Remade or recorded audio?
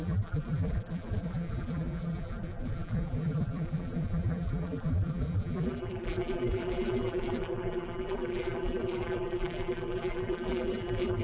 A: remade